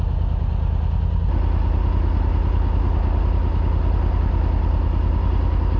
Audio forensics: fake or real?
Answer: real